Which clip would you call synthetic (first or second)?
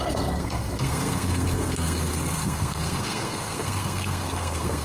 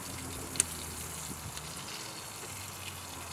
first